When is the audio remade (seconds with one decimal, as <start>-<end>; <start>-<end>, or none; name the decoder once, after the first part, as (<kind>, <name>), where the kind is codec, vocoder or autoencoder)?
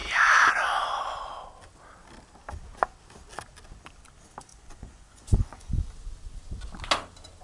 4.5-5.7 (vocoder, Vocos)